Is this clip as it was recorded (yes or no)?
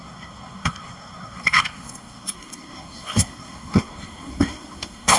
no